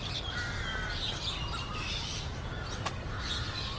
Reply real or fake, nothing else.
real